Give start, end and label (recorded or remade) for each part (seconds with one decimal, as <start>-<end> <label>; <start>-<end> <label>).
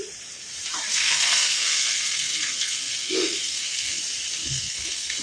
0.0-0.9 recorded; 0.9-4.0 remade; 4.0-4.4 recorded; 4.4-5.2 remade